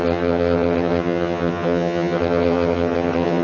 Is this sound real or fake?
fake